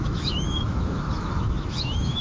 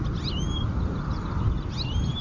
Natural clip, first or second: second